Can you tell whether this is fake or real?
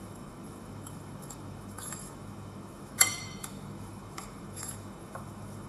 fake